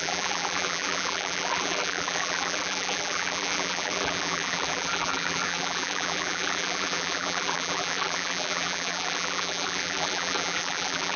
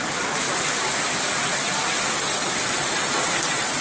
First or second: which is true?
second